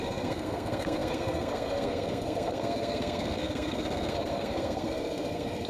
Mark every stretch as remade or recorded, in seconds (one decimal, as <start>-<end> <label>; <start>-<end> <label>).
0.0-5.7 remade